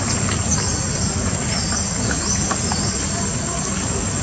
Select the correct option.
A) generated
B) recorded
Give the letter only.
B